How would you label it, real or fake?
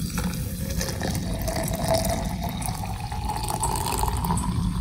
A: real